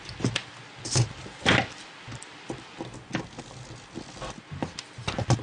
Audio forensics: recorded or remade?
recorded